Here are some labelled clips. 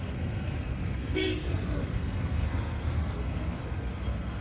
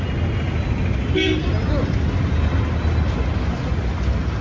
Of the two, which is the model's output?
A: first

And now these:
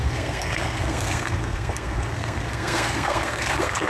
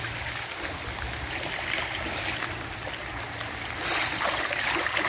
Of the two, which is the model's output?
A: first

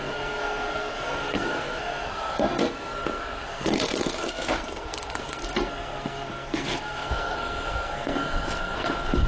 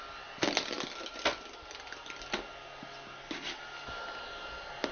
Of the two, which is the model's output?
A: first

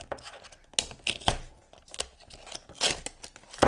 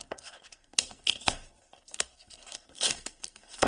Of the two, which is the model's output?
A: second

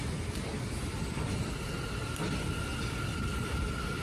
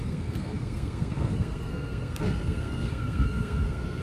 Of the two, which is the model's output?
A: second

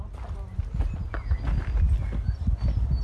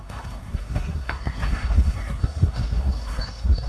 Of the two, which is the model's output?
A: second